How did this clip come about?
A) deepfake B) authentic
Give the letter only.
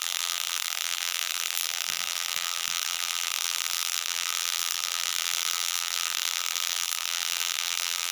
A